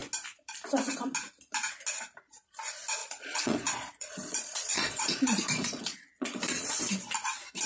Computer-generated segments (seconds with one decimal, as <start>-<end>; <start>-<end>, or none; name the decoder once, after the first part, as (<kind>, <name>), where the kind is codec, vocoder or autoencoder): 3.0-6.8 (vocoder, Vocos)